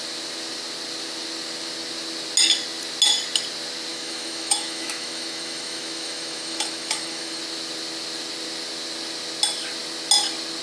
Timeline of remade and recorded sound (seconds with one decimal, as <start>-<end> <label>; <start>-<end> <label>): 0.0-3.9 recorded; 3.9-7.4 remade; 7.4-10.6 recorded